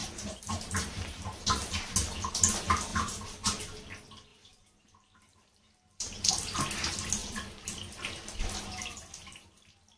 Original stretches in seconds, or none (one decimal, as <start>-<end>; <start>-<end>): 1.9-2.9; 3.6-4.3; 6.3-7.2; 7.8-10.0